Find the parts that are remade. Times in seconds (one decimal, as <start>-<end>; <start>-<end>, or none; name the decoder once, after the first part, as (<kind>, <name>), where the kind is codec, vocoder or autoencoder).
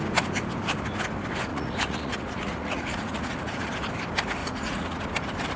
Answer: 1.5-3.7 (vocoder, Vocos); 4.4-5.0